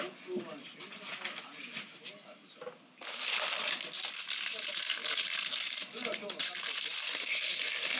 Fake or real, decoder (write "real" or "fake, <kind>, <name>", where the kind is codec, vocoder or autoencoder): real